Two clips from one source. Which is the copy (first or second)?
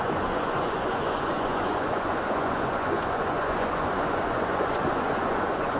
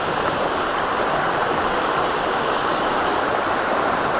first